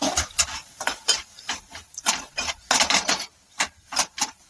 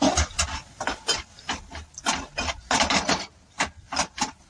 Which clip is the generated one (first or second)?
first